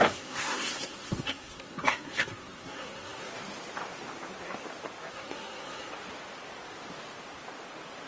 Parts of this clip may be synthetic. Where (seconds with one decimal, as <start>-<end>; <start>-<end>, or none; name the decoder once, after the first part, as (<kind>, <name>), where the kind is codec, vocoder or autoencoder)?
0.0-3.3 (codec, SNAC); 5.1-5.9